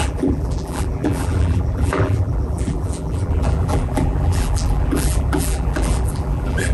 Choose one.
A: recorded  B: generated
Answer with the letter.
B